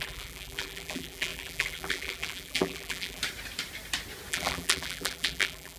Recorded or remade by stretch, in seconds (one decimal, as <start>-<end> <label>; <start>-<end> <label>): 0.0-3.2 remade; 3.2-4.3 recorded; 4.3-5.8 remade